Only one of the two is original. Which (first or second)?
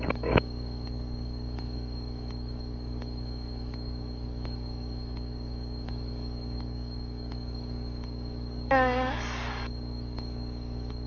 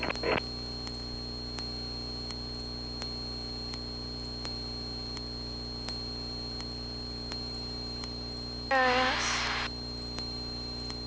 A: second